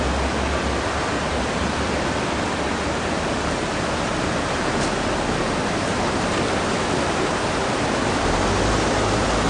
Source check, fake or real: real